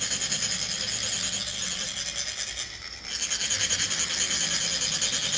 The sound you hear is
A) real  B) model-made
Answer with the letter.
A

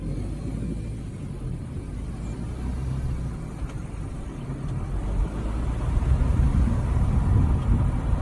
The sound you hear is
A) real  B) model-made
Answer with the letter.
A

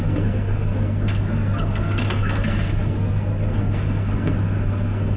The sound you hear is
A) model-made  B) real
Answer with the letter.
A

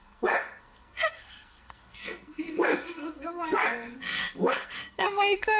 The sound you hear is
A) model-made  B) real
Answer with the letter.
A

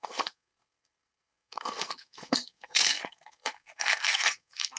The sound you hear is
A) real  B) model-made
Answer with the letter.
B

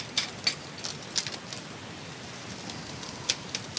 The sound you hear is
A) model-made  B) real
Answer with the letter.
B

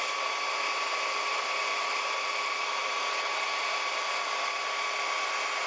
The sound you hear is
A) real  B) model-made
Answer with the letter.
A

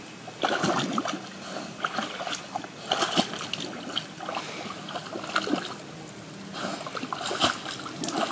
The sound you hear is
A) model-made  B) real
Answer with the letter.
B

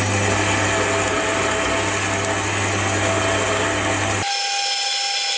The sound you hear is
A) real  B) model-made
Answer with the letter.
A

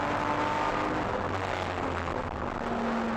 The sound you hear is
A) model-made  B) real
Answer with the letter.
B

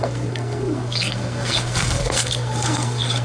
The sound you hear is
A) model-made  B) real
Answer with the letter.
A